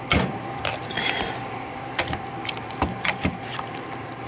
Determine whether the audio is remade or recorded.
remade